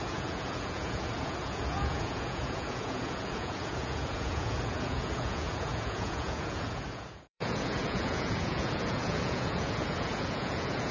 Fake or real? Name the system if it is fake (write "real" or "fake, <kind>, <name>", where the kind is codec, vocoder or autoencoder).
fake, vocoder, Vocos